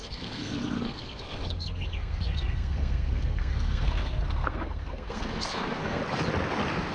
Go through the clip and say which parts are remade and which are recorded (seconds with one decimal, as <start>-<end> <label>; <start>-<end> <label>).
0.0-6.0 remade; 6.0-6.9 recorded